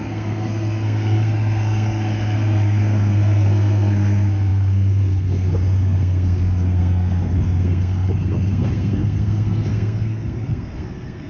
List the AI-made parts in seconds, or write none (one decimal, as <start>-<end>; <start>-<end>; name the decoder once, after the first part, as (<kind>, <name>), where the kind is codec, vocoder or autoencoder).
0.0-11.3 (codec, SNAC)